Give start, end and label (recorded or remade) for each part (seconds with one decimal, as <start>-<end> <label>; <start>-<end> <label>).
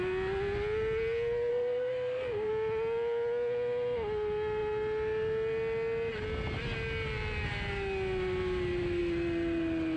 0.0-1.5 recorded; 1.5-2.5 remade; 2.5-10.0 recorded